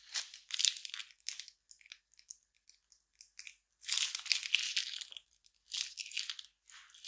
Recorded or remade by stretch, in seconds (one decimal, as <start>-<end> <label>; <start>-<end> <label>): 0.0-7.1 recorded